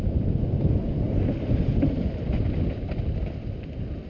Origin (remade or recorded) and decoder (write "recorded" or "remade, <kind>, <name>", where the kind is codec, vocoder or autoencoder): recorded